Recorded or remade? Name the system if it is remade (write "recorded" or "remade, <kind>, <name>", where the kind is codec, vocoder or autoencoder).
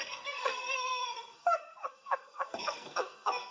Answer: remade, codec, SNAC